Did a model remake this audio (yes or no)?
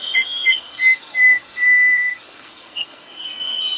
yes